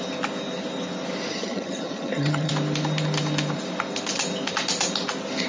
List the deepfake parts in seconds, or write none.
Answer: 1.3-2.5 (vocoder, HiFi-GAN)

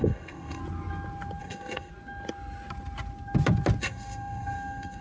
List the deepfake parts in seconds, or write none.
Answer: 0.0-0.6 (codec, SNAC); 1.4-1.9; 3.8-5.0

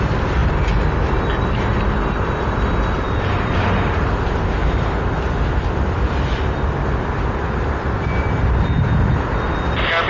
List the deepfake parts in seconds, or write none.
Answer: none

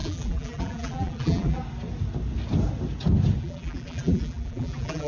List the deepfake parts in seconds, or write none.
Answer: 0.0-1.6 (vocoder, BigVGAN v2); 3.4-5.1

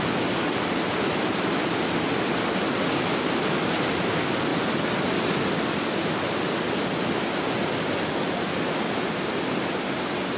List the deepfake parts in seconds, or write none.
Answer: none

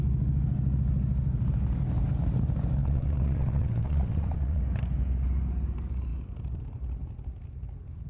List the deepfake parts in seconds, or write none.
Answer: 2.8-4.6 (vocoder, WaveNeXt)

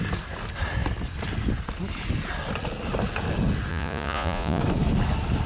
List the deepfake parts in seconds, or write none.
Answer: 3.7-4.6 (vocoder, Vocos)